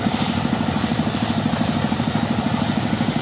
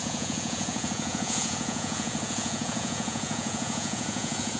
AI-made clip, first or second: second